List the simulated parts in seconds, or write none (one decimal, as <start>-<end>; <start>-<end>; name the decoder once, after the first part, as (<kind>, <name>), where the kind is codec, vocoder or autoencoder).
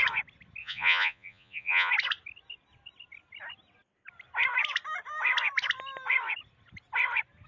0.6-1.9 (vocoder, Vocos)